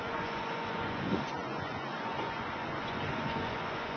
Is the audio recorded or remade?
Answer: remade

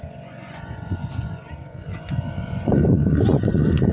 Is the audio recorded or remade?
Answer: remade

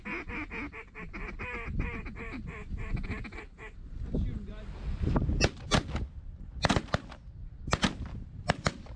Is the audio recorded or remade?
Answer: recorded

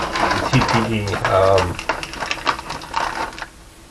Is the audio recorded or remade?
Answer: recorded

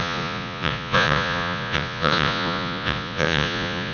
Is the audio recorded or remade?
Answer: remade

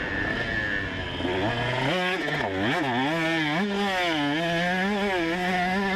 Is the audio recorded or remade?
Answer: recorded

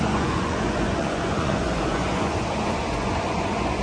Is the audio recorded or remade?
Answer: remade